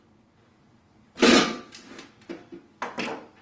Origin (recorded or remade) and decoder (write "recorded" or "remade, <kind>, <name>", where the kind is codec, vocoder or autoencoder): recorded